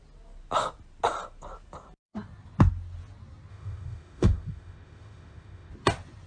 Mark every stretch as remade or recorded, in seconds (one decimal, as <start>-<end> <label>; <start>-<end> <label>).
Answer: 0.0-3.5 recorded; 3.5-5.7 remade; 5.7-6.3 recorded

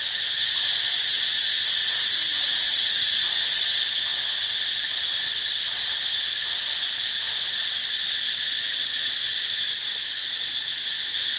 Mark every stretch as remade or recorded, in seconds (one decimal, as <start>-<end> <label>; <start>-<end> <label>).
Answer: 0.0-11.4 recorded